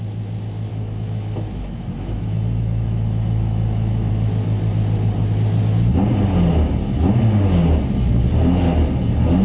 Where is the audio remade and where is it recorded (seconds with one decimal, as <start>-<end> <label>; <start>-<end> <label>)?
0.0-0.7 recorded; 0.7-4.1 remade; 4.1-9.4 recorded